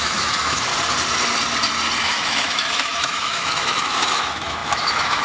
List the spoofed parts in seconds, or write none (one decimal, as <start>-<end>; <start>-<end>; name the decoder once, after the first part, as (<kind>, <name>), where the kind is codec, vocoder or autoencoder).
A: 0.0-0.7 (autoencoder, DAC-VAE); 2.0-5.2